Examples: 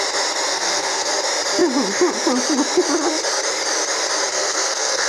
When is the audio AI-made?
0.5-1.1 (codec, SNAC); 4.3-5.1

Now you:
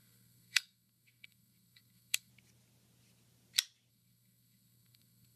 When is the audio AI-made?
0.0-2.3 (codec, SNAC); 3.9-5.4

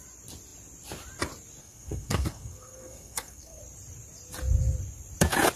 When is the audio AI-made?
1.6-3.6 (codec, SNAC)

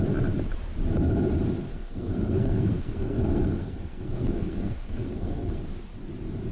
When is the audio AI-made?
1.7-5.6 (codec, SNAC)

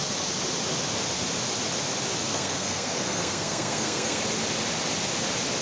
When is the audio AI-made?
2.3-4.2 (codec, SNAC)

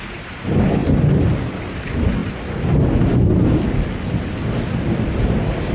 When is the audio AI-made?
none

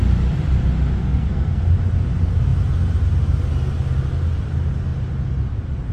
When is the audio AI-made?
1.0-1.6 (codec, SNAC)

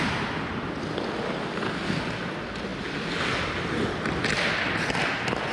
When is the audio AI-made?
none